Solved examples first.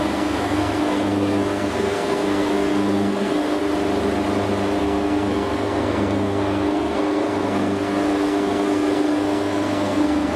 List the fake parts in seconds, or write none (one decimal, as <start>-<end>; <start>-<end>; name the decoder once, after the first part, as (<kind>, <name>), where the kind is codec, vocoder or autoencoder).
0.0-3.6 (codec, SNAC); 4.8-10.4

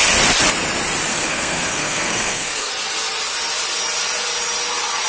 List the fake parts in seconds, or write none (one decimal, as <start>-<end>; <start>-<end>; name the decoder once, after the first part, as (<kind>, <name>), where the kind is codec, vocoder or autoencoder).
1.1-2.7 (codec, SNAC)

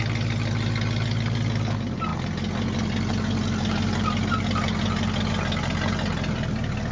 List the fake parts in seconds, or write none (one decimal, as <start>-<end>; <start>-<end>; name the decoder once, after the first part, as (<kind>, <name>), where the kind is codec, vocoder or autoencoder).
none

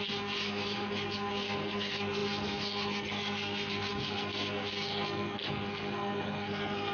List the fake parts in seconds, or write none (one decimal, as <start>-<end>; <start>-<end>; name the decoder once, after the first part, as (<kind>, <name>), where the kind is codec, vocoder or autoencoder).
0.0-6.9 (codec, SNAC)

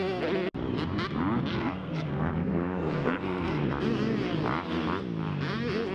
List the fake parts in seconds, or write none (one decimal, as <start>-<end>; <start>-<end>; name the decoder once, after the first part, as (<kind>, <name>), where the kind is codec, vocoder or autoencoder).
1.5-3.6 (codec, SNAC)

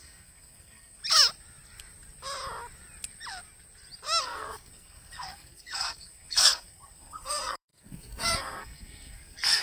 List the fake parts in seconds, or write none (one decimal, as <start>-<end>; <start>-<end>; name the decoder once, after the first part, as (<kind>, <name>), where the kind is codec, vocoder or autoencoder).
0.0-1.0 (codec, SNAC); 4.2-9.6

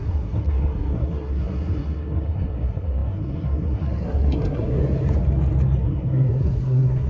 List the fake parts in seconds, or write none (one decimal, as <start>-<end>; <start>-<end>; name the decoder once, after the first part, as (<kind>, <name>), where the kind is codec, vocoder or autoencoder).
0.0-4.8 (codec, SNAC); 5.8-7.1

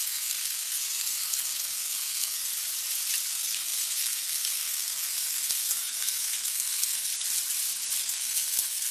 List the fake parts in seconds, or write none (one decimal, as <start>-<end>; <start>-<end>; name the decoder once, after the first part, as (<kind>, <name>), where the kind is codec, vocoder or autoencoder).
0.0-2.5 (codec, SNAC); 3.3-7.1; 8.0-8.9